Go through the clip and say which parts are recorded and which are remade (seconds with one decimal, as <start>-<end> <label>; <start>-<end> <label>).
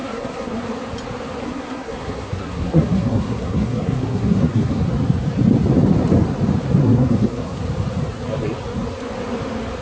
0.0-0.6 remade; 0.6-1.4 recorded; 1.4-4.8 remade; 4.8-6.8 recorded; 6.8-7.6 remade; 7.6-9.8 recorded